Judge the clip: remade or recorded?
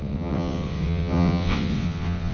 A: remade